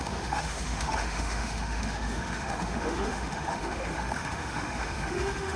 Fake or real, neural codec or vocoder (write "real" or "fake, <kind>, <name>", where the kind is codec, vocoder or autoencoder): fake, autoencoder, DAC-VAE